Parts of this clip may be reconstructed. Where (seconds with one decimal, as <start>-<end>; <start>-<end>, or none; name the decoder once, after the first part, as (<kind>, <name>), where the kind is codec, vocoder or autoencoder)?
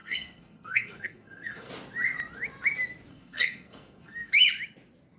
0.0-1.7 (codec, SNAC); 3.1-4.3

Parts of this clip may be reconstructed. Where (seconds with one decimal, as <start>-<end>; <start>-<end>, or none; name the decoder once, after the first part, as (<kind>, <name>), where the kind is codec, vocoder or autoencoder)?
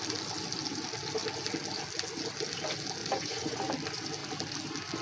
3.0-3.6 (vocoder, Vocos)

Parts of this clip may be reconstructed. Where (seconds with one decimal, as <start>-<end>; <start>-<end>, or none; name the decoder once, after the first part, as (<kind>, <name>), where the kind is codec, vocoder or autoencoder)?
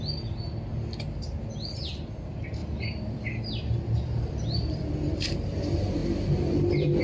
2.6-5.6 (vocoder, BigVGAN v2)